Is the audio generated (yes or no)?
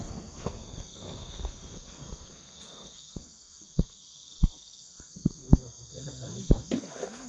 yes